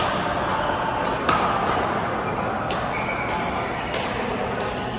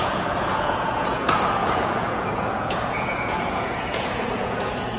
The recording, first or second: first